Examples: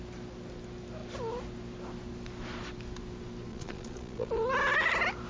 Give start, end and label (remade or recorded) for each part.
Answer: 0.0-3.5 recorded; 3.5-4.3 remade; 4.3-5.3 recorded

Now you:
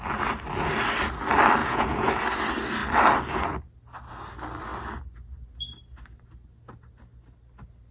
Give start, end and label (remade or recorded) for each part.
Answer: 0.0-1.6 recorded; 1.6-2.1 remade; 2.1-7.9 recorded

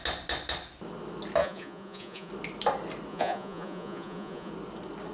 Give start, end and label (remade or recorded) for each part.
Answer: 0.0-1.4 recorded; 1.4-2.3 remade; 2.3-3.1 recorded; 3.1-4.5 remade; 4.5-5.1 recorded

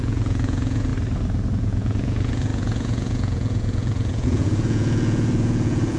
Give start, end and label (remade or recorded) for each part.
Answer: 0.0-0.9 remade; 0.9-1.5 recorded; 1.5-6.0 remade